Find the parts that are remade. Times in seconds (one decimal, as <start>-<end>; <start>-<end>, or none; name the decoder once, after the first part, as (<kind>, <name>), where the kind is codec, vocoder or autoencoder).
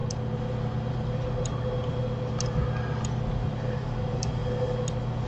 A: 3.2-4.4 (vocoder, BigVGAN v2)